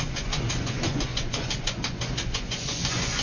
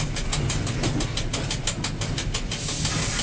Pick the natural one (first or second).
second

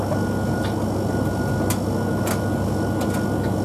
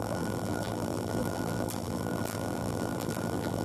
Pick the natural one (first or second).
first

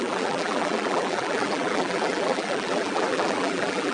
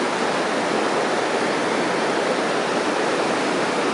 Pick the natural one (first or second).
second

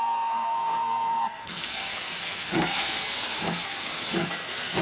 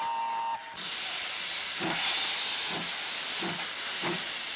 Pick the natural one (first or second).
second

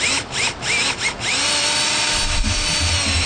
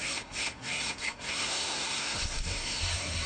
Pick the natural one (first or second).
first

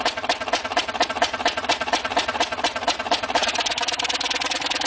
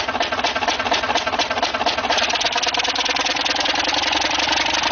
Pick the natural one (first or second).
second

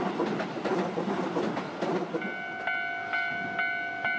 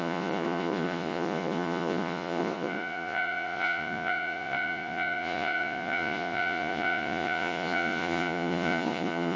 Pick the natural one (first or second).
first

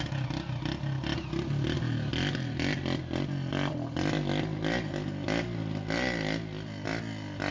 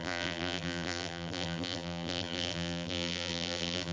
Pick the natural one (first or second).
first